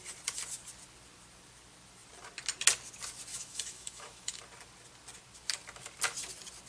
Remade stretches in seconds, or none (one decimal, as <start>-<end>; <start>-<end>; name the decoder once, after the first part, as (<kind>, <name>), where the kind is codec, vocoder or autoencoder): 3.3-4.4 (autoencoder, DAC-VAE)